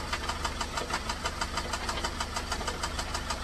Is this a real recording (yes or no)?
yes